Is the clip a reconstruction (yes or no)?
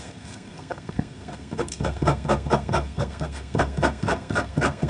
yes